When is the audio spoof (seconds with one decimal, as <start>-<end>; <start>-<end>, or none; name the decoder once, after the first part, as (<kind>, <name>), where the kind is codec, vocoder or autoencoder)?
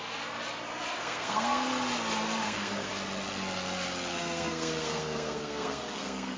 1.0-1.7 (codec, SNAC); 2.4-2.9; 4.1-6.4